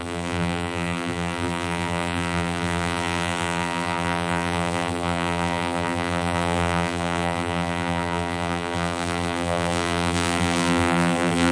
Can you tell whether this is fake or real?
fake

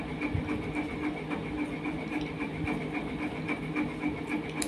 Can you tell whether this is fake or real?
real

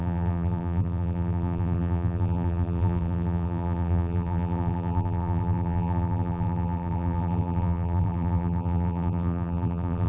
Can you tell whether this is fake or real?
fake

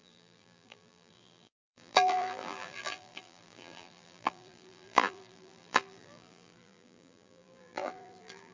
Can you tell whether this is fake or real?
fake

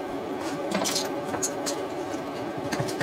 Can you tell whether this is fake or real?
fake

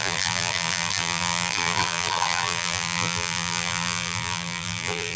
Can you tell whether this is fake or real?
fake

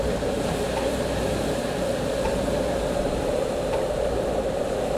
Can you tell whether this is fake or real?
fake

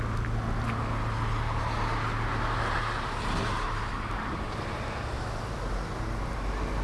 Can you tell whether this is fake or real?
real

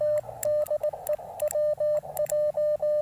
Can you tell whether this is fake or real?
real